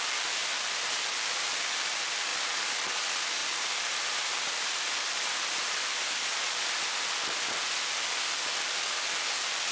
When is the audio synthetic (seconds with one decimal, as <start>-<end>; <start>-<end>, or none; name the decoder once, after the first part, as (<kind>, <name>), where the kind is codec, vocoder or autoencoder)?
0.4-1.0 (vocoder, BigVGAN v2); 2.3-2.9; 3.4-7.3